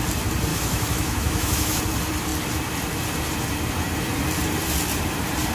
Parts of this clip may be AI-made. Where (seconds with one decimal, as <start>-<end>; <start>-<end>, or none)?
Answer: 0.5-1.8